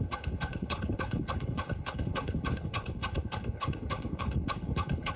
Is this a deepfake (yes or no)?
yes